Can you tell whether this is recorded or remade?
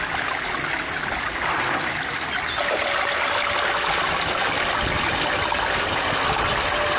recorded